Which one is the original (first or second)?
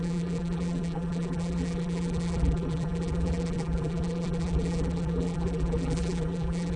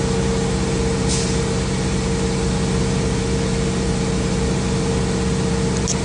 second